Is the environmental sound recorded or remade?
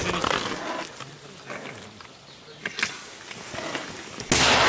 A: recorded